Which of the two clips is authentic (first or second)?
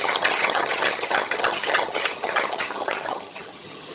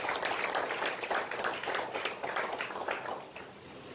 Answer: second